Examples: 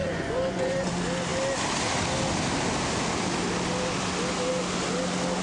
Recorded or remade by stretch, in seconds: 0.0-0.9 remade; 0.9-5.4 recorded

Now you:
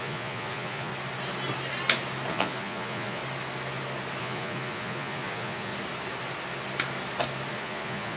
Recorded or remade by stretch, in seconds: 0.0-0.9 remade; 0.9-2.3 recorded; 2.3-3.2 remade; 3.2-4.2 recorded; 4.2-5.7 remade; 5.7-7.5 recorded; 7.5-8.2 remade

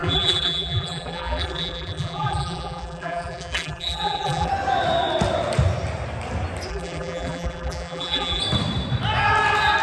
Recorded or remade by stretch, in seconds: 0.0-4.5 remade; 4.5-6.7 recorded; 6.7-8.4 remade; 8.4-9.8 recorded

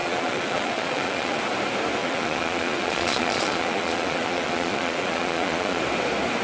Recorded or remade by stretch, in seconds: 0.0-1.4 remade; 1.4-2.0 recorded; 2.0-5.8 remade; 5.8-6.4 recorded